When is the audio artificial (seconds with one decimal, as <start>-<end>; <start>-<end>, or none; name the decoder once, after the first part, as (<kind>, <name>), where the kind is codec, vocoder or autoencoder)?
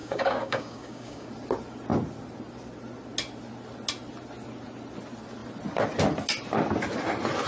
0.0-1.3 (codec, DAC)